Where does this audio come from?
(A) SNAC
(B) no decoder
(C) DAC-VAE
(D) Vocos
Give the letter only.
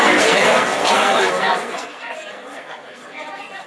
A